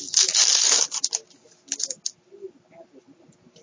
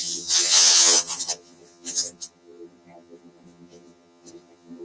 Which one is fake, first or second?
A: second